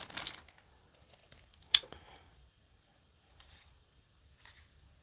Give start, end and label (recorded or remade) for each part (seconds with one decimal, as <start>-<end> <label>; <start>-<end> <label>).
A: 0.0-1.2 recorded; 1.2-4.2 remade; 4.2-5.0 recorded